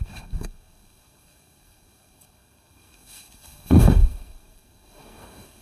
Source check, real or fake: fake